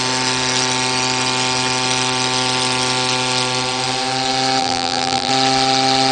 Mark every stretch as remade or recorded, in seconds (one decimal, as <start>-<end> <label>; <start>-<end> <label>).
0.0-4.6 recorded; 4.6-5.3 remade; 5.3-6.1 recorded